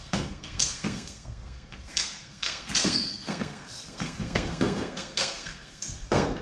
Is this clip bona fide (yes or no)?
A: no